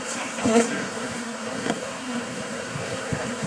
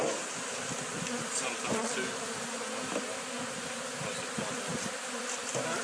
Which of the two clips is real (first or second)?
second